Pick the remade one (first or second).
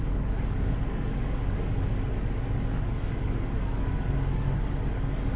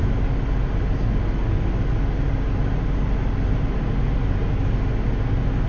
first